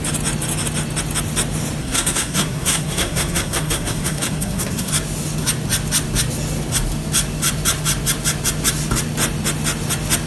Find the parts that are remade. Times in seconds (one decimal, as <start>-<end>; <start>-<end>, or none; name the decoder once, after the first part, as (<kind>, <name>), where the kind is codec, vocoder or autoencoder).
1.8-4.9 (codec, SNAC)